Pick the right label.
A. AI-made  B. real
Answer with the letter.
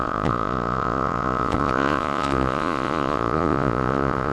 A